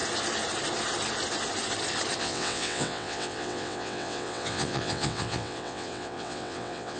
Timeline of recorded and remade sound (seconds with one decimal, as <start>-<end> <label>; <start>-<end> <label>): 0.0-2.2 recorded; 2.2-7.0 remade